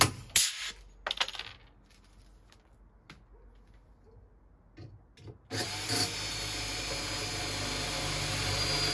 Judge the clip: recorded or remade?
recorded